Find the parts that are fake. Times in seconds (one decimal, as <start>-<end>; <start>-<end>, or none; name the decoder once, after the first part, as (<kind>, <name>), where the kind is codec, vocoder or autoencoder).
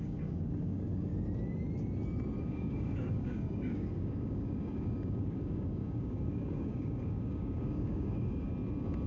0.0-1.1 (codec, DAC); 2.4-8.5